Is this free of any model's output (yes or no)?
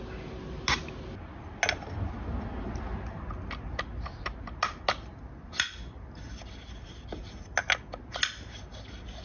yes